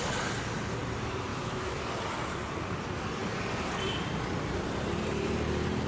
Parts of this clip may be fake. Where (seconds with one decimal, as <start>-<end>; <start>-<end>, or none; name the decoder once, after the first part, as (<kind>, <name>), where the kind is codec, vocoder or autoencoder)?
1.3-1.8 (autoencoder, DAC-VAE)